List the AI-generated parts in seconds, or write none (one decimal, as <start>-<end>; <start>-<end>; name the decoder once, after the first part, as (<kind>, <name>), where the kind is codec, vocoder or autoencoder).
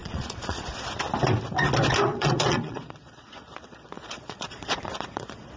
0.0-0.6 (vocoder, Vocos); 2.1-5.6